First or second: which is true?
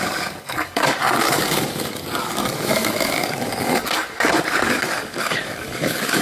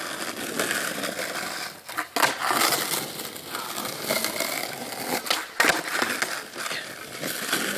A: second